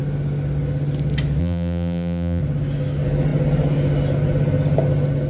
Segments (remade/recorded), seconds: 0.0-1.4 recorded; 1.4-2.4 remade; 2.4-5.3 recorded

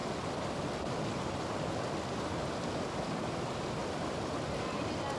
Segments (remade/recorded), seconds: 0.0-2.4 remade; 2.4-3.8 recorded; 3.8-4.4 remade; 4.4-5.2 recorded

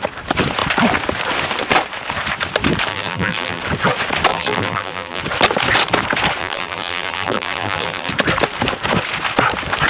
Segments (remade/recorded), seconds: 0.0-2.9 recorded; 2.9-3.6 remade; 3.6-4.3 recorded; 4.3-5.2 remade; 5.2-6.4 recorded; 6.4-8.1 remade; 8.1-9.9 recorded

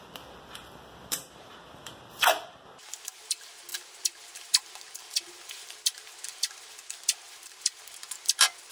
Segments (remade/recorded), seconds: 0.0-8.7 remade

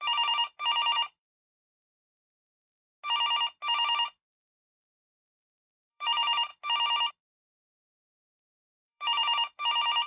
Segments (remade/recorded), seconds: 0.0-1.7 remade; 1.7-5.9 recorded; 5.9-6.5 remade; 6.5-7.1 recorded; 7.1-10.1 remade

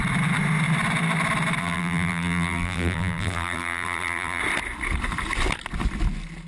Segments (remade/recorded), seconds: 0.0-1.6 recorded; 1.6-4.4 remade; 4.4-6.5 recorded

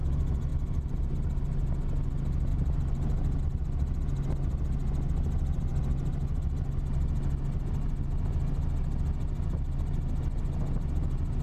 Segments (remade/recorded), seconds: 0.0-0.5 recorded; 0.5-1.1 remade; 1.1-2.5 recorded; 2.5-3.4 remade; 3.4-11.4 recorded

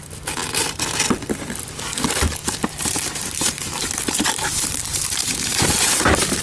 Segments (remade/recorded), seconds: 0.0-2.4 recorded; 2.4-6.4 remade